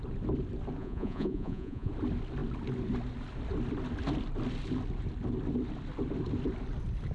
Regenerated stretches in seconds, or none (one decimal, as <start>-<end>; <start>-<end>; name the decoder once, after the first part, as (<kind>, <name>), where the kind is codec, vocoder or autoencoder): 0.8-1.9 (vocoder, Vocos)